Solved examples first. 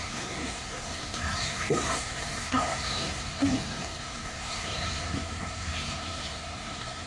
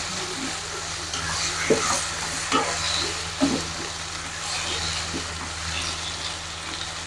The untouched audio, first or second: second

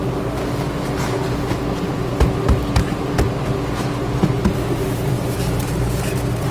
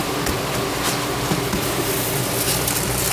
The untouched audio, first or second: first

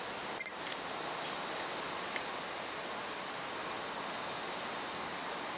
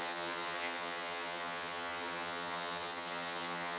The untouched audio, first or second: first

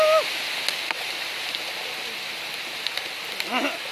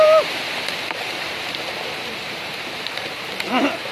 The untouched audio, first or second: first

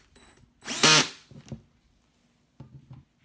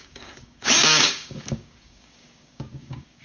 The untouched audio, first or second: first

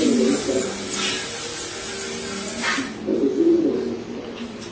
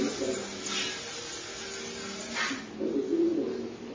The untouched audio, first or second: second